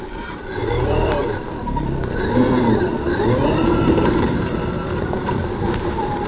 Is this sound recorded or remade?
remade